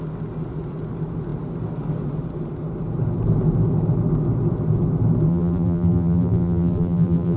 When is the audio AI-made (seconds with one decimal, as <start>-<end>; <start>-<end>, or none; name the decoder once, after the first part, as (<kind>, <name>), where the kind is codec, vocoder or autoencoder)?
5.3-7.4 (vocoder, BigVGAN v2)